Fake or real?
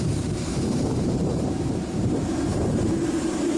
fake